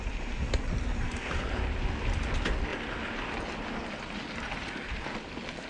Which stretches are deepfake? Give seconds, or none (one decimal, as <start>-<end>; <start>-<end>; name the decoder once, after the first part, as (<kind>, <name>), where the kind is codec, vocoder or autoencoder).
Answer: none